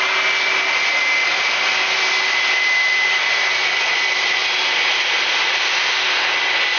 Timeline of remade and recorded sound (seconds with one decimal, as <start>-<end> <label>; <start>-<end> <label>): 0.0-6.8 recorded